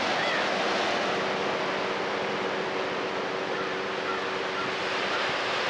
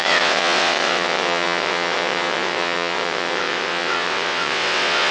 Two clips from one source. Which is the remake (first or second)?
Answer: second